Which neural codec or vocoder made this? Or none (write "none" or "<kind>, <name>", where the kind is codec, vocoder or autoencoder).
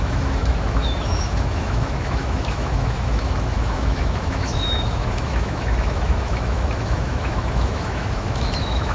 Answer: autoencoder, DAC-VAE